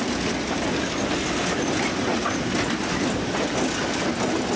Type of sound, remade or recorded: recorded